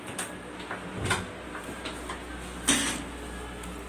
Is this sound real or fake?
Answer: real